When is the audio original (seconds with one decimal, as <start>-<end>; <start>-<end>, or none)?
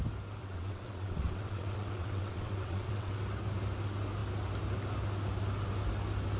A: 0.0-0.4; 3.2-6.4